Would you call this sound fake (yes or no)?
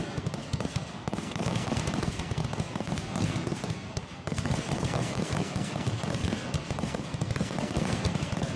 yes